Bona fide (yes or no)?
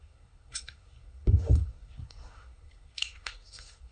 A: no